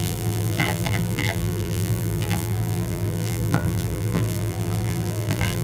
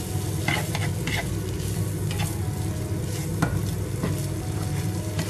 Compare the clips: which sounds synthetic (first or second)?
first